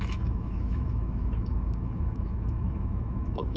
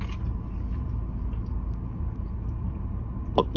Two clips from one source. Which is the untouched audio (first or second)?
second